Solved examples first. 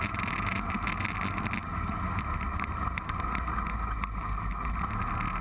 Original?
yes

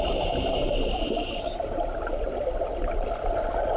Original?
yes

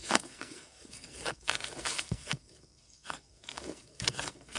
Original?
no